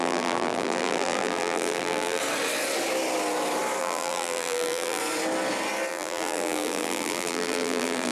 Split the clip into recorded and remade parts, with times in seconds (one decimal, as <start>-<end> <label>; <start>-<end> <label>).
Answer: 0.0-2.2 remade; 2.2-3.8 recorded; 3.8-5.0 remade; 5.0-5.9 recorded; 5.9-8.1 remade